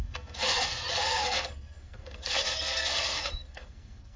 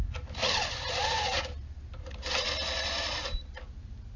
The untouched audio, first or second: second